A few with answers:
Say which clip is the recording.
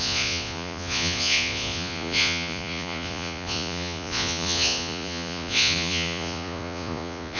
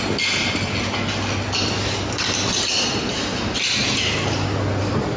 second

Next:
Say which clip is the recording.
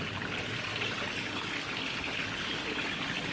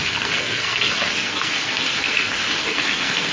first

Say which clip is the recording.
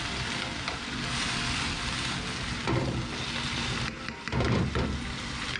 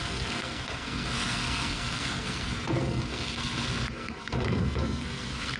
first